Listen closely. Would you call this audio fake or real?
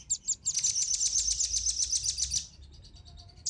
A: real